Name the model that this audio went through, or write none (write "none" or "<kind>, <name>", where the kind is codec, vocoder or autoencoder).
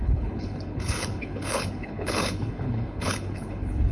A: codec, HILCodec